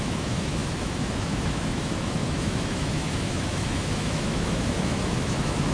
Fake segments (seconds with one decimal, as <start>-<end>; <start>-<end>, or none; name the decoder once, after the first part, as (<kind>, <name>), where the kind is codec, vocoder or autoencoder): 0.0-5.7 (autoencoder, DAC-VAE)